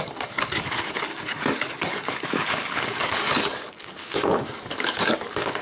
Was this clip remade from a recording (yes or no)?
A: yes